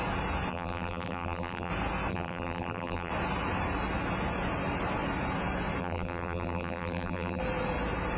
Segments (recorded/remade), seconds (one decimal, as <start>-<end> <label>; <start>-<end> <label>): 0.0-0.5 recorded; 0.5-1.7 remade; 1.7-2.1 recorded; 2.1-3.1 remade; 3.1-5.8 recorded; 5.8-7.4 remade; 7.4-8.2 recorded